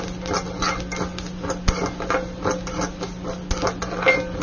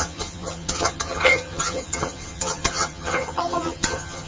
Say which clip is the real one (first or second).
first